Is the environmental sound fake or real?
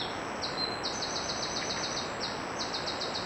real